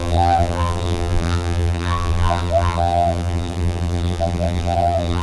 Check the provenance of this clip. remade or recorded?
remade